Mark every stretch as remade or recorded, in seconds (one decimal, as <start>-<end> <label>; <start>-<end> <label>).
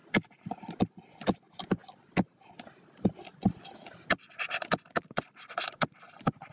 0.0-6.5 recorded